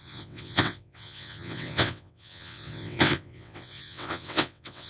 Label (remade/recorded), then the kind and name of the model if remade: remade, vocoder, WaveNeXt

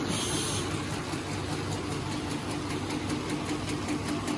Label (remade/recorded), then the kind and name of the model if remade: recorded